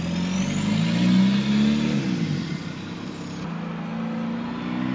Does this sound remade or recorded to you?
recorded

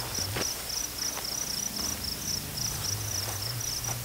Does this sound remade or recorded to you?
recorded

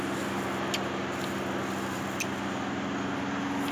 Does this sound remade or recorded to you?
recorded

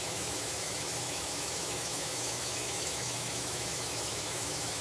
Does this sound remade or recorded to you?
remade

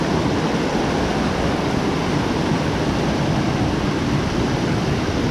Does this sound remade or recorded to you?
recorded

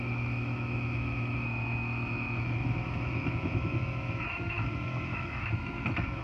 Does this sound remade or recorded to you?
remade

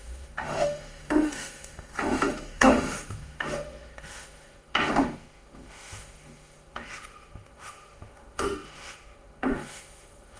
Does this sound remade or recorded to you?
remade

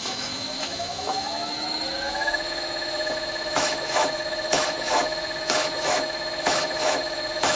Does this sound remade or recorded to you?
remade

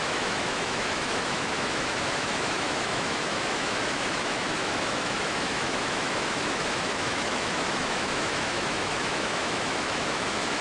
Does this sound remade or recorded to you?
remade